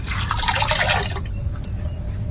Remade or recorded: recorded